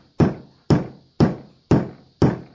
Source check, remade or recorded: recorded